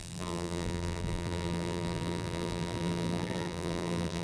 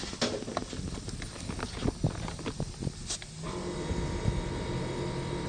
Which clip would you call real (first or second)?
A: second